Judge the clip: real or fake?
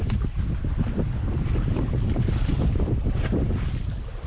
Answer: real